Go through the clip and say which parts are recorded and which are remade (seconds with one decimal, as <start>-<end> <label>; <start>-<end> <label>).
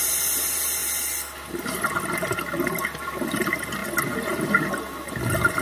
0.0-5.6 recorded